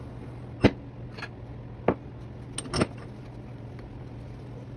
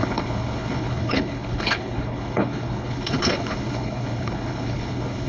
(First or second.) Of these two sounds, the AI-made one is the second